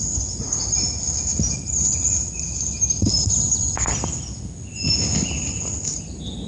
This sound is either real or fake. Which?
real